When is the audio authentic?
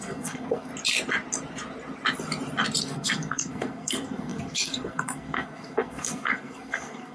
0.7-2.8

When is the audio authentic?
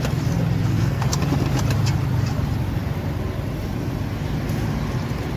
0.0-0.7; 1.2-5.4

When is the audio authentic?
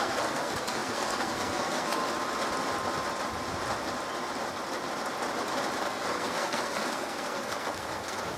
2.0-5.8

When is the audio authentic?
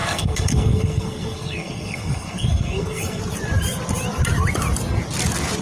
3.2-5.6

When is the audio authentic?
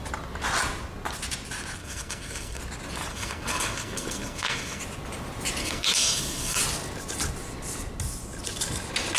0.0-1.8; 2.6-3.1; 4.8-5.6; 6.6-9.2